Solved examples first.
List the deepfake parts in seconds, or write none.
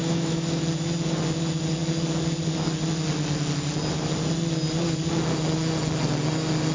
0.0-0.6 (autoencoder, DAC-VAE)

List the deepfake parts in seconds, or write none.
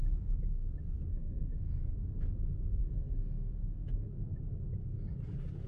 1.1-1.9 (codec, SNAC); 2.8-4.1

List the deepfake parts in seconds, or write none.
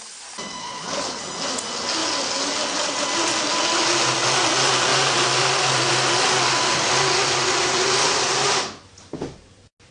0.6-1.2 (codec, HILCodec)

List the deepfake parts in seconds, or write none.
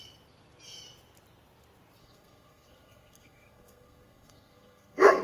2.0-5.2 (codec, SNAC)